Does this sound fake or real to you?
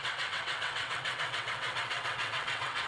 fake